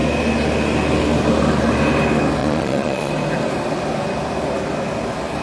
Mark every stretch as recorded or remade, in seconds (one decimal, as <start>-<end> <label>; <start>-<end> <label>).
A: 0.0-2.4 recorded; 2.4-3.1 remade; 3.1-5.4 recorded